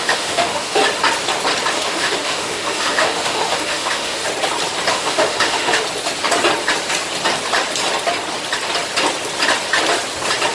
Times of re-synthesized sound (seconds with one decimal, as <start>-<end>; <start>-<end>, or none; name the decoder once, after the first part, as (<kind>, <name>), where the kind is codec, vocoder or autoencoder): 0.0-0.8 (autoencoder, DAC-VAE); 1.7-4.2; 4.9-5.8